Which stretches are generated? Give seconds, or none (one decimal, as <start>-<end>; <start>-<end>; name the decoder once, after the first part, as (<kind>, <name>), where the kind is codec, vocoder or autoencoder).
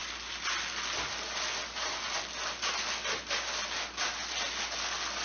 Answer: none